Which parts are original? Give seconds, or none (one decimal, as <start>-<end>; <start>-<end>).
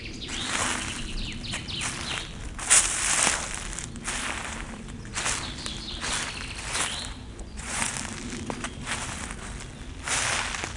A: 0.0-7.2; 7.9-10.8